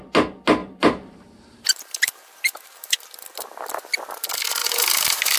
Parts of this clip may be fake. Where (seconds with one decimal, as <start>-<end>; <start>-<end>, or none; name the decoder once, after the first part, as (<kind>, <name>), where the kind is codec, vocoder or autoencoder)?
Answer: 0.6-3.2 (vocoder, BigVGAN v2); 4.6-5.4